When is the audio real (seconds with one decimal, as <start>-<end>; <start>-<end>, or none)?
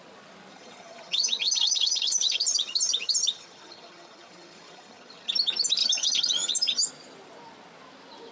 0.0-0.5; 5.3-5.8; 6.9-8.3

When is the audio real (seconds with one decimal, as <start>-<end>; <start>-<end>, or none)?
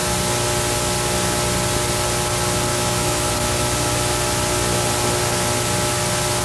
0.0-2.7; 3.3-6.4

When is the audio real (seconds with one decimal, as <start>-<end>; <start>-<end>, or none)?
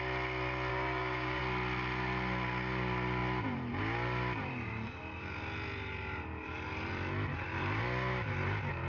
0.0-0.7; 1.4-8.9